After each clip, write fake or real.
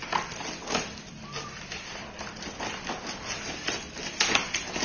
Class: real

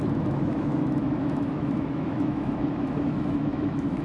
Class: fake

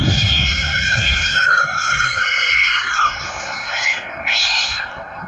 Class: fake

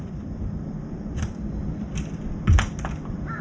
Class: real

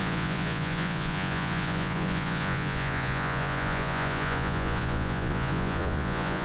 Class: fake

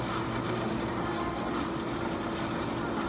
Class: real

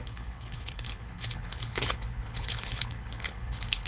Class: fake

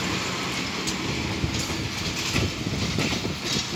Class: real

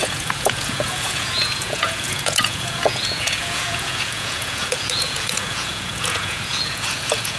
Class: fake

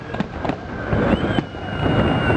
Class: real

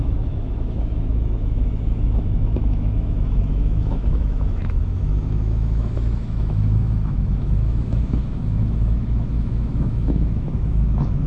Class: fake